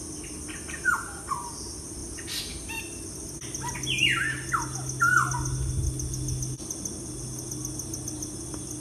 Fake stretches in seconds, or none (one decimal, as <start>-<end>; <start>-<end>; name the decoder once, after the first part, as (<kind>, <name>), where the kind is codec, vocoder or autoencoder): none